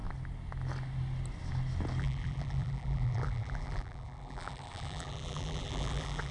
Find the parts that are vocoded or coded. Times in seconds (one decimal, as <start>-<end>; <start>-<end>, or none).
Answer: 2.0-6.3